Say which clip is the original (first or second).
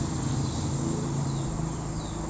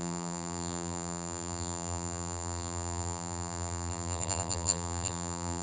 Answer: first